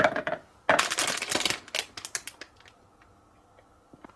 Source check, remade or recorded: recorded